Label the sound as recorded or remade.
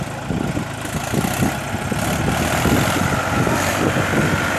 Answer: recorded